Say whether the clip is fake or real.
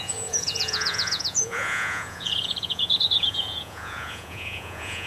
fake